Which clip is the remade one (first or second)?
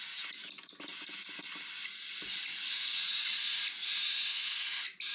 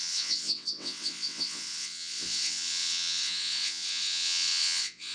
second